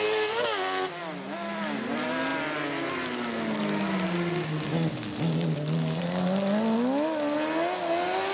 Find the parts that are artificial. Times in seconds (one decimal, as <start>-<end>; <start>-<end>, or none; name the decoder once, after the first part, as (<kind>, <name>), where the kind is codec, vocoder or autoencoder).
none